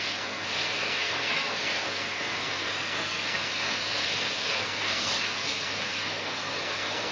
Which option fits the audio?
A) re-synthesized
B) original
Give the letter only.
A